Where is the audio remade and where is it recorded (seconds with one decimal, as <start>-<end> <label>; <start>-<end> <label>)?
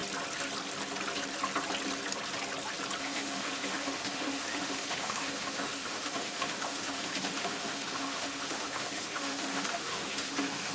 0.0-3.0 recorded; 3.0-10.7 remade